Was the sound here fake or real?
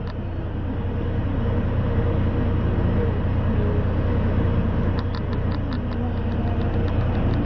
real